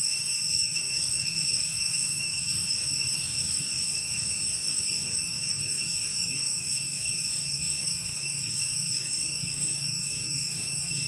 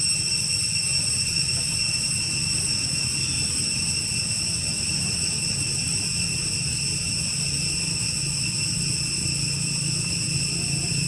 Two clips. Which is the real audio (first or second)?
second